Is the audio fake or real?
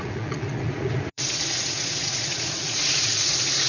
fake